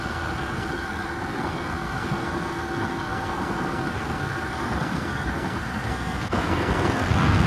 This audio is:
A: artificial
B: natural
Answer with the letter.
A